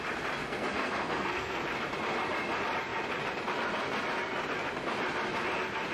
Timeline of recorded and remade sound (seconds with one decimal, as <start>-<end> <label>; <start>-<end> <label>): 0.0-0.4 recorded; 0.4-1.6 remade; 1.6-5.9 recorded